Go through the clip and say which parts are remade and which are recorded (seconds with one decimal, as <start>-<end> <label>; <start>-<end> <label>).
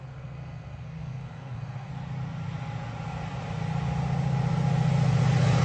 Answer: 0.0-1.9 remade; 1.9-5.6 recorded